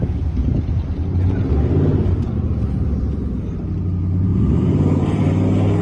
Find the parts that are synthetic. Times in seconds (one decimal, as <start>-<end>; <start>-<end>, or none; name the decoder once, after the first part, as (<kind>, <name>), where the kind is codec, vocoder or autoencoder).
0.4-3.6 (vocoder, BigVGAN v2); 4.3-5.2